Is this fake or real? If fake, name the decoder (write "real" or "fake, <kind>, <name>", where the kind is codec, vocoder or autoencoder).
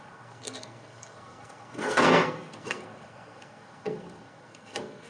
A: fake, codec, SNAC